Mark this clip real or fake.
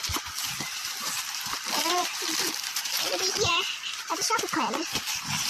real